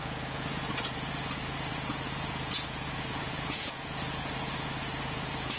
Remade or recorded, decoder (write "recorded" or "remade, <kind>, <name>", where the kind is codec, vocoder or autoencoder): remade, vocoder, Vocos